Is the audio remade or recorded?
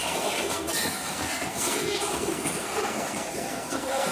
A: remade